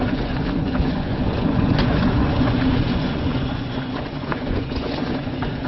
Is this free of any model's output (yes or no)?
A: no